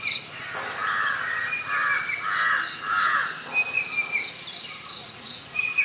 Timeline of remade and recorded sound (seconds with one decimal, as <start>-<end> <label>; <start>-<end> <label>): 0.0-5.0 recorded; 5.0-5.8 remade